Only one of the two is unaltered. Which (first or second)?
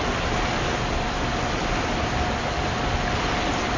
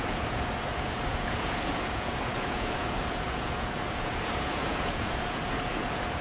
first